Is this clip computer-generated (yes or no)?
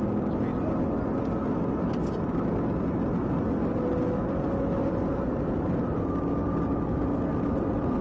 no